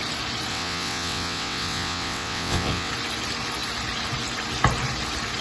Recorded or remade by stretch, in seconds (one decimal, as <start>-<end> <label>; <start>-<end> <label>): 0.0-0.5 recorded; 0.5-2.9 remade; 2.9-5.4 recorded